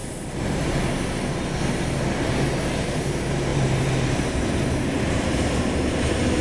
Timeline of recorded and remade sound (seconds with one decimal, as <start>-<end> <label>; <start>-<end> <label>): 0.0-0.7 remade; 0.7-3.5 recorded; 3.5-6.4 remade